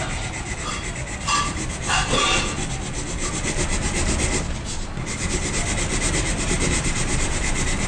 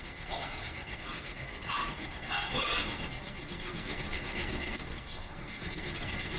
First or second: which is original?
first